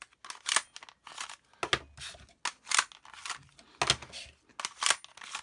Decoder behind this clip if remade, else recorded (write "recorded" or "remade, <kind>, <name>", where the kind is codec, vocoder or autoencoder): recorded